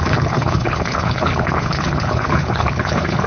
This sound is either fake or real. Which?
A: fake